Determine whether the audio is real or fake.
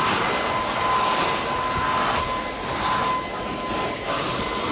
real